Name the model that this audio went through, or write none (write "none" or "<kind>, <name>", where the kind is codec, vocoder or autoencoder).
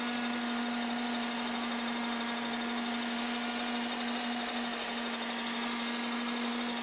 none